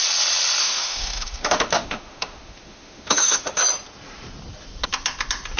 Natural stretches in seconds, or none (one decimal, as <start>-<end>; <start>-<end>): 0.0-0.6; 3.6-5.6